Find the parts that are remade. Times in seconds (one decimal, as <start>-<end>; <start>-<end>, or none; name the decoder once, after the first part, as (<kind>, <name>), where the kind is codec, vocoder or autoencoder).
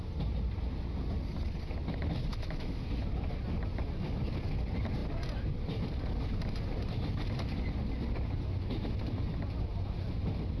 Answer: 2.3-2.8 (autoencoder, DAC-VAE)